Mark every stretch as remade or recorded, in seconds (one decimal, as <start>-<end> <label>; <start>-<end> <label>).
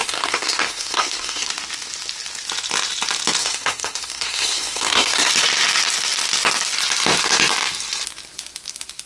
0.0-1.5 remade; 1.5-3.4 recorded; 3.4-5.3 remade; 5.3-9.1 recorded